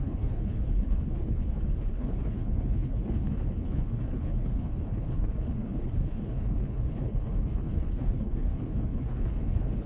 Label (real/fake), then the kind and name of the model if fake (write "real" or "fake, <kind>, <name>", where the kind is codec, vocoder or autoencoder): fake, codec, HILCodec